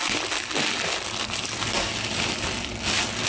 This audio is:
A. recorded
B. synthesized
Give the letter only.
A